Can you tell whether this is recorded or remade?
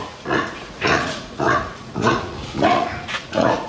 remade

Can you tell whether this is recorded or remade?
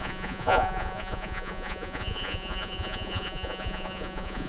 remade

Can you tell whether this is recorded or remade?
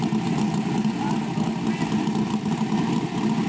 recorded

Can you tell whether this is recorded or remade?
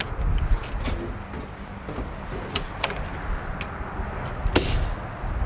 recorded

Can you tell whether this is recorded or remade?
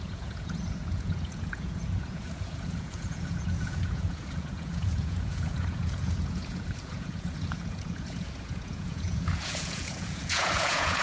remade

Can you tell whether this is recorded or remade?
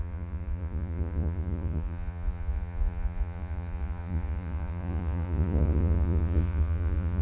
remade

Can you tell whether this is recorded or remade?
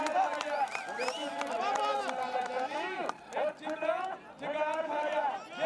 recorded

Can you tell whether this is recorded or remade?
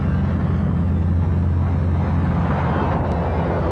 recorded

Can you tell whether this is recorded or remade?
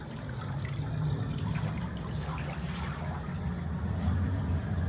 recorded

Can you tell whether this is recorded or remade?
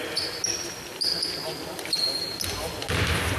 recorded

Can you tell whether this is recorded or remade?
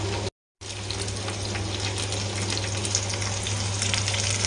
recorded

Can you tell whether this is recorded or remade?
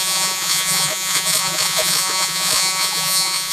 remade